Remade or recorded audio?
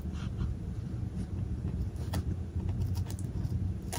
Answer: recorded